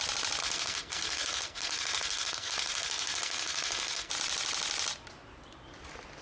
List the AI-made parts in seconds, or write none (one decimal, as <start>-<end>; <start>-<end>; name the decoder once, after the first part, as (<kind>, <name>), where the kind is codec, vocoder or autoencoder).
0.4-4.1 (codec, SNAC)